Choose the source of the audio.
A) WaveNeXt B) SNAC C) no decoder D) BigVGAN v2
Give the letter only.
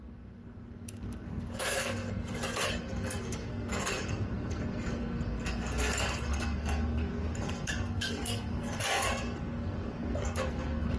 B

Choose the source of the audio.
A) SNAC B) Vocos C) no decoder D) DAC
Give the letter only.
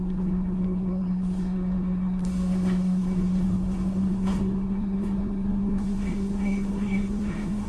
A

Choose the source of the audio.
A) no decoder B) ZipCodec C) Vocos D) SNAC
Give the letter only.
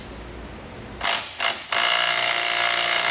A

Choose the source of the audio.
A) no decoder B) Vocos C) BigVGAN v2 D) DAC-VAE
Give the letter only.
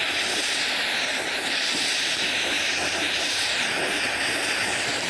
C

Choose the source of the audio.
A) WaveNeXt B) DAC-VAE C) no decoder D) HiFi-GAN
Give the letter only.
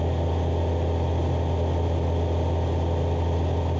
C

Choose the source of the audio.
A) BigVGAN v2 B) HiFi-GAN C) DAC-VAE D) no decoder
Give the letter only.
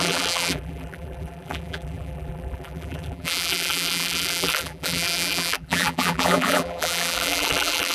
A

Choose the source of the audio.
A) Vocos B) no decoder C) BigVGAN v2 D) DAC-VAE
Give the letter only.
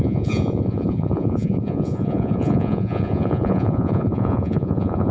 A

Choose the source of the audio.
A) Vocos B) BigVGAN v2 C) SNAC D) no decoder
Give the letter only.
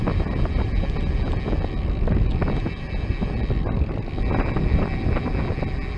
D